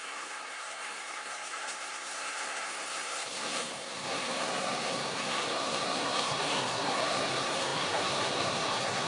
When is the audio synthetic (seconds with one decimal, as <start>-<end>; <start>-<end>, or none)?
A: 0.0-9.1